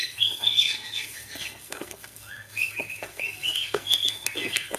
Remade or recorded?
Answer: remade